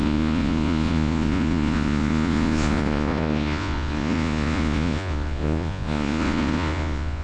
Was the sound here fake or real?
fake